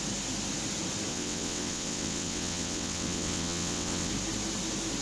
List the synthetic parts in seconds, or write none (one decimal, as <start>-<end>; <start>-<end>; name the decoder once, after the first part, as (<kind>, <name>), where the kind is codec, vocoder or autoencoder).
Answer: 1.1-4.1 (vocoder, WaveNeXt)